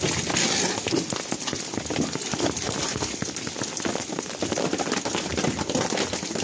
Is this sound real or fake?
real